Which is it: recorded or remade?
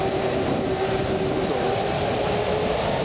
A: recorded